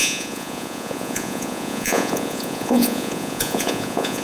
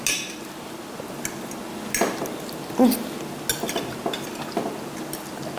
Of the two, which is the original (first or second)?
second